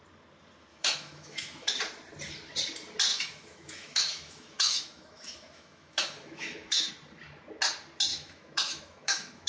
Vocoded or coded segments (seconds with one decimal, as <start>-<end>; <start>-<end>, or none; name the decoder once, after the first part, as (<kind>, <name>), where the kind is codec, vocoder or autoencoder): 0.7-1.7 (autoencoder, DAC-VAE); 3.1-6.9; 8.1-9.5